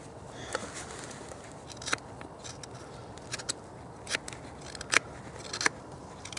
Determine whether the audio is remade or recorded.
recorded